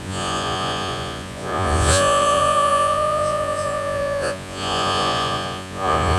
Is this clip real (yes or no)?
no